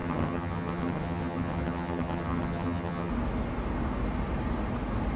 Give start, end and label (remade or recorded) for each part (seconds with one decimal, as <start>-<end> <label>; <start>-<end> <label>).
0.0-3.1 remade; 3.1-5.2 recorded